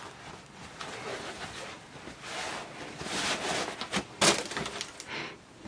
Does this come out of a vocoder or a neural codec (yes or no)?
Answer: no